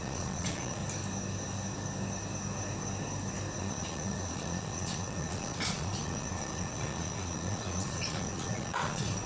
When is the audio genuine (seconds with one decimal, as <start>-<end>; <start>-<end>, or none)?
0.8-3.6